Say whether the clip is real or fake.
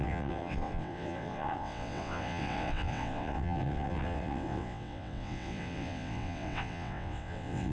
fake